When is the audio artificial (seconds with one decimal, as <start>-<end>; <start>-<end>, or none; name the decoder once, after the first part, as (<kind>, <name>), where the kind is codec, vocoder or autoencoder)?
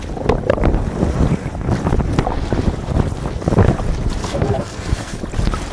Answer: 4.2-5.2 (codec, SNAC)